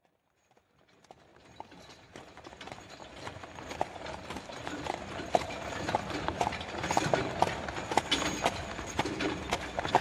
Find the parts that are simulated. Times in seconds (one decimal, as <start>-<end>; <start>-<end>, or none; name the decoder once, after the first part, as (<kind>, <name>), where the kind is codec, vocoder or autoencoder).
1.3-5.3 (vocoder, BigVGAN v2)